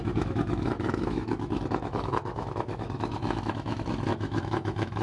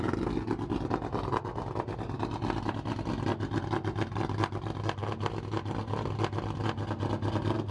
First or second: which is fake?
first